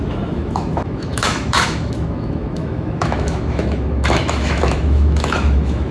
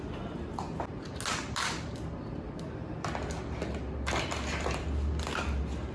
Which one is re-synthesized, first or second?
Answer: first